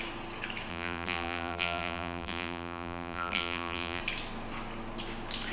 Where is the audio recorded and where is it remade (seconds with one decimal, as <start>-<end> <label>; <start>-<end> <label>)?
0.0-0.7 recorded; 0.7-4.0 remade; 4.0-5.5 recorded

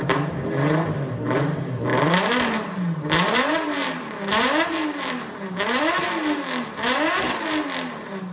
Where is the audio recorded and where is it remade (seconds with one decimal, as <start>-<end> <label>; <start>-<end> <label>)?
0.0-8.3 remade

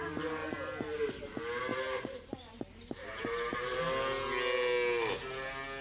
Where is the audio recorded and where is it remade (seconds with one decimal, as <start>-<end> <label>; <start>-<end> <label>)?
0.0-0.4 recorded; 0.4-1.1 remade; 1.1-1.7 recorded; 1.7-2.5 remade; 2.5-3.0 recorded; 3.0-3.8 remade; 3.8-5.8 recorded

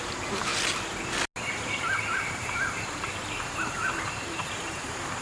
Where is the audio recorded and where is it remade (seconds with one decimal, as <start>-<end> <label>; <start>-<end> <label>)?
0.0-0.5 remade; 0.5-1.7 recorded; 1.7-5.2 remade

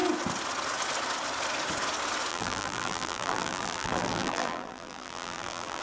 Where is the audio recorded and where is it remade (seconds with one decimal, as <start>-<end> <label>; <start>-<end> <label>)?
0.0-2.3 recorded; 2.3-5.8 remade

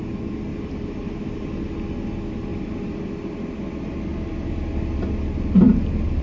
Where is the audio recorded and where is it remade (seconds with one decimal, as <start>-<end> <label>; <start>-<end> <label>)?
0.0-0.5 recorded; 0.5-1.6 remade; 1.6-6.2 recorded